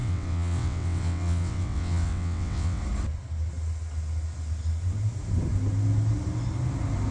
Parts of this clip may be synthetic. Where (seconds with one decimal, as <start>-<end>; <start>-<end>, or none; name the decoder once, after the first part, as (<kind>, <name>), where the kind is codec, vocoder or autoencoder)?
0.0-2.8 (vocoder, WaveNeXt)